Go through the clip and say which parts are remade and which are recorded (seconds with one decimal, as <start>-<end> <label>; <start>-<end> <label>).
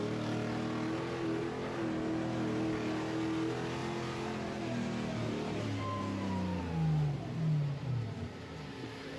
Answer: 0.0-9.2 recorded